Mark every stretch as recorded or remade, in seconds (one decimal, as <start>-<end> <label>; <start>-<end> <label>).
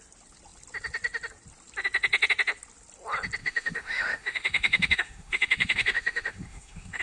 0.0-3.4 recorded; 3.4-7.0 remade